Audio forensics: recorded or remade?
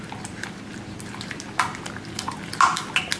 recorded